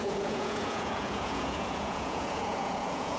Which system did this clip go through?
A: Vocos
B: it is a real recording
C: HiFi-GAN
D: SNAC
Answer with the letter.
A